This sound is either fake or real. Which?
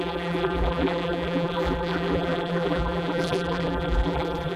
fake